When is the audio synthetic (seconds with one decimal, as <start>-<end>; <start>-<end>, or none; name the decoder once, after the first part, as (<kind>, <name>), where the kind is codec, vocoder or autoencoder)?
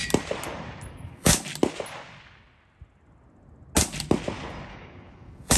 0.9-1.3 (codec, DAC); 4.7-5.6